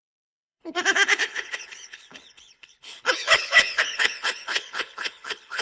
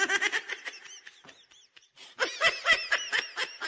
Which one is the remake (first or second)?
first